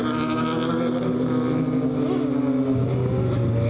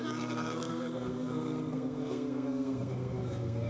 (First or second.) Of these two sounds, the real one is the first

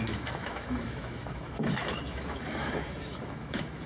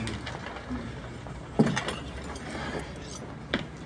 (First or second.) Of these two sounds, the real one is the second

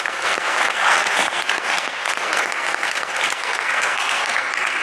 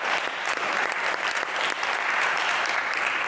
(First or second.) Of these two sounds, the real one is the second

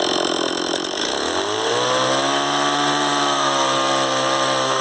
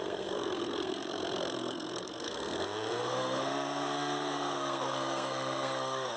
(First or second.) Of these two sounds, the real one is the first